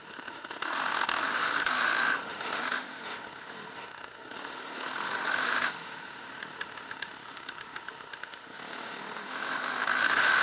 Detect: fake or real fake